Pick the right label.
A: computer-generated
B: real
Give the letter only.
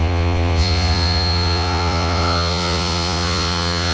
A